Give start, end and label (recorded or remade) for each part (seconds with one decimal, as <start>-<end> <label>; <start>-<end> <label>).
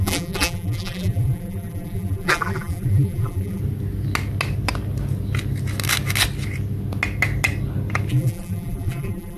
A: 0.0-3.6 remade; 3.6-8.1 recorded; 8.1-9.4 remade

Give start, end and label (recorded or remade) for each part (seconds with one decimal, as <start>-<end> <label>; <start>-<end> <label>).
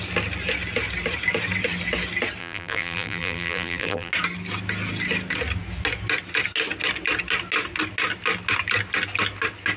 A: 0.0-2.4 recorded; 2.4-4.1 remade; 4.1-9.8 recorded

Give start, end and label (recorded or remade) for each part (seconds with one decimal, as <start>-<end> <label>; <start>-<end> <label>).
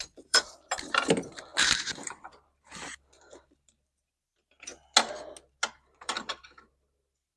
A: 0.0-4.7 remade; 4.7-5.7 recorded; 5.7-7.4 remade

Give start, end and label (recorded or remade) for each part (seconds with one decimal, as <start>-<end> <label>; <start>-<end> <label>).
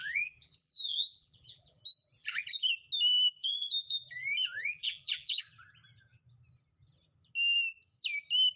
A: 0.0-1.8 remade; 1.8-2.2 recorded; 2.2-2.7 remade; 2.7-3.4 recorded; 3.4-5.4 remade; 5.4-8.6 recorded